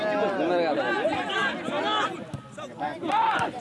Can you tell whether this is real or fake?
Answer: real